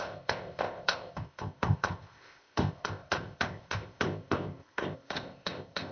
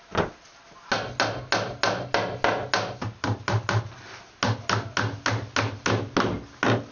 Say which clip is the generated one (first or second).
first